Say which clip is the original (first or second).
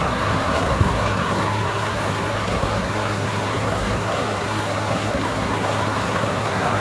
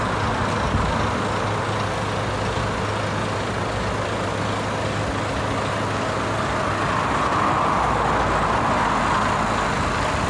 second